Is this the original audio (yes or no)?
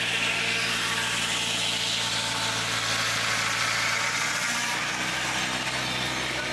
yes